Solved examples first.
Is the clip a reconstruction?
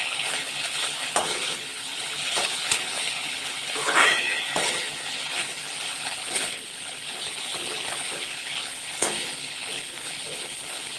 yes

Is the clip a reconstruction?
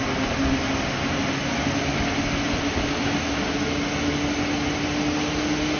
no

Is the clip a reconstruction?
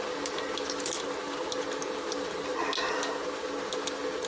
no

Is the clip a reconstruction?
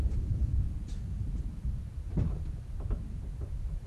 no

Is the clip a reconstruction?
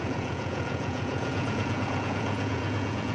yes